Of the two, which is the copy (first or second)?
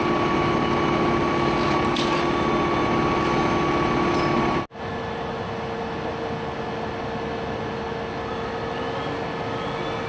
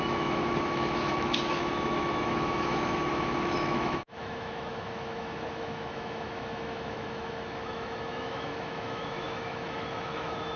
second